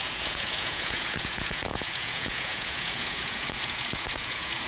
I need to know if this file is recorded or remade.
remade